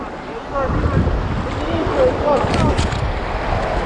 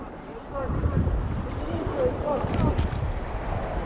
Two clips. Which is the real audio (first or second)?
first